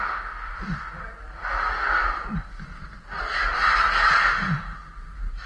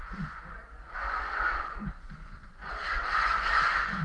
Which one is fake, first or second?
second